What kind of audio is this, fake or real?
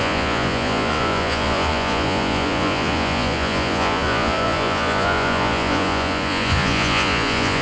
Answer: fake